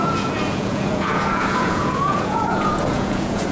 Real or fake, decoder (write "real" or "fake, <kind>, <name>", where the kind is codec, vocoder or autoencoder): fake, vocoder, Vocos